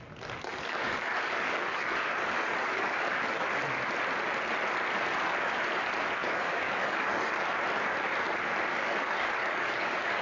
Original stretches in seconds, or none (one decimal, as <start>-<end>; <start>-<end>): 0.0-0.5; 3.6-6.2; 7.3-8.7